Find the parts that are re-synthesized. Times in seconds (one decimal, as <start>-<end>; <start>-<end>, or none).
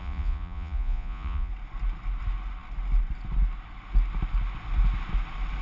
0.0-1.5